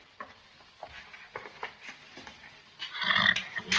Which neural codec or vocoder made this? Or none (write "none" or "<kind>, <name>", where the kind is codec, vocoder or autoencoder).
none